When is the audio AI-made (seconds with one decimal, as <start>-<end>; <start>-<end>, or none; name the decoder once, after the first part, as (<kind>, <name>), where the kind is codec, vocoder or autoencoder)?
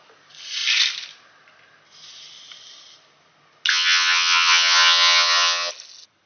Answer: 3.7-5.7 (vocoder, HiFi-GAN)